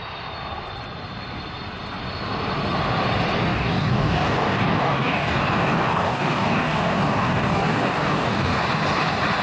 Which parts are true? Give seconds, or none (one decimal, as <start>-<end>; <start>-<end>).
0.0-3.5; 8.6-9.4